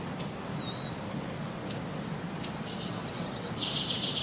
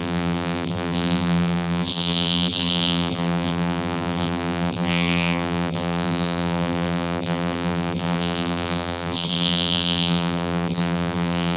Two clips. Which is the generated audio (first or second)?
second